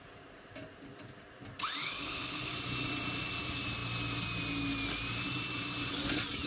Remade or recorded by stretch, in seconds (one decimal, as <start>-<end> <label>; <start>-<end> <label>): 0.0-1.8 recorded; 1.8-2.5 remade; 2.5-6.5 recorded